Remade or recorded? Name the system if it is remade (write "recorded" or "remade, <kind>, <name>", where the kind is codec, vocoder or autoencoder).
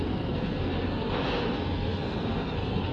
remade, codec, SNAC